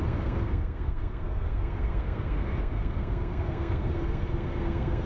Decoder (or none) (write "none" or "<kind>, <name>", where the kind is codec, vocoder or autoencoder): codec, SNAC